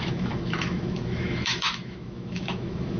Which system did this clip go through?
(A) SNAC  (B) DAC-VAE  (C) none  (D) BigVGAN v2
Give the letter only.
B